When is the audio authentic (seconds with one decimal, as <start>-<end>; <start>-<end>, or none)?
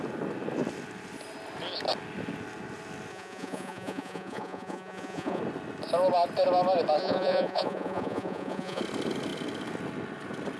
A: 0.0-3.1; 5.4-7.0; 8.8-10.6